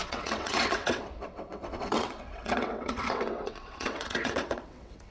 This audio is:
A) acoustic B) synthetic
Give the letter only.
B